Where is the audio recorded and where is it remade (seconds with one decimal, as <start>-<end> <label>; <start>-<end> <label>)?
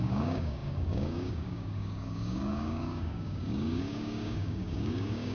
0.0-5.3 remade